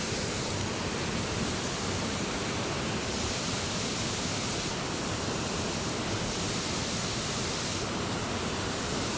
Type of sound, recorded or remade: recorded